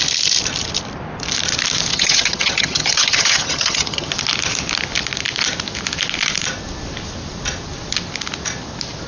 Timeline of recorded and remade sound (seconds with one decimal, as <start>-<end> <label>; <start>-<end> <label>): 0.0-1.9 recorded; 1.9-4.1 remade; 4.1-9.1 recorded